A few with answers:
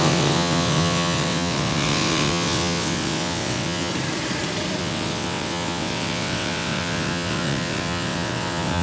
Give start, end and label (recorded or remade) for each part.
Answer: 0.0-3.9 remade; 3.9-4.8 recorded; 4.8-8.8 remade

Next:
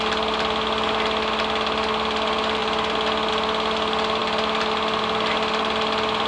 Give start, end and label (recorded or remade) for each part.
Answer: 0.0-6.3 recorded

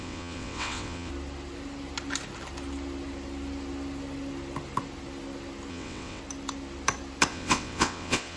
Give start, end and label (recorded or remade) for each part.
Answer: 0.0-1.1 remade; 1.1-5.7 recorded; 5.7-6.2 remade; 6.2-7.3 recorded; 7.3-8.4 remade